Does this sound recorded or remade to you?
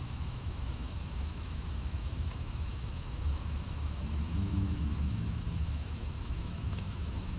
remade